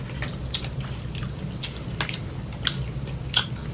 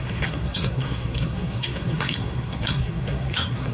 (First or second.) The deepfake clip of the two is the second